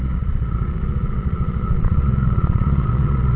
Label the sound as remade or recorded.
remade